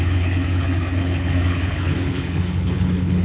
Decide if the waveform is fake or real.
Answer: fake